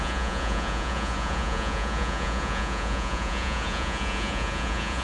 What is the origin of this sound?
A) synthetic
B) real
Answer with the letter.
A